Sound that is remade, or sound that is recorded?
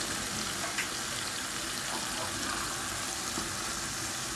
recorded